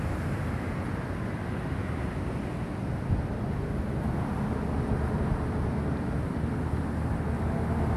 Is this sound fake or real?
real